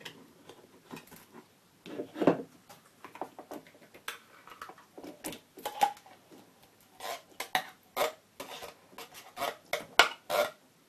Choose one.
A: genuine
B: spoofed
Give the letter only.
A